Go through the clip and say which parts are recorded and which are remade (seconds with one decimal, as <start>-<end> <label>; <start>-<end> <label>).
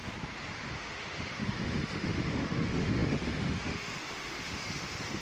0.0-0.7 recorded; 0.7-5.2 remade